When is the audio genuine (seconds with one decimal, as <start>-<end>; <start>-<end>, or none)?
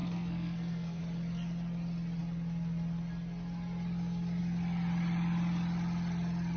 1.0-6.6